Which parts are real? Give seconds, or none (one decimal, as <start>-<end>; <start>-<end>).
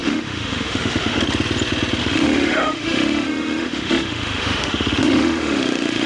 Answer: 1.2-2.0